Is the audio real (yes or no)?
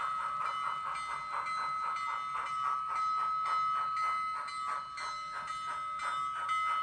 yes